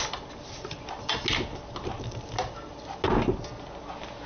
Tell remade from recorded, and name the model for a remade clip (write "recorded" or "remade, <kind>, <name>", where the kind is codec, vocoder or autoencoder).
recorded